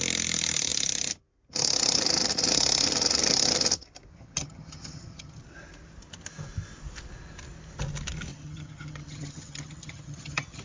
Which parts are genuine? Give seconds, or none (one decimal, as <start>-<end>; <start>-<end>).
0.0-4.1; 5.4-8.3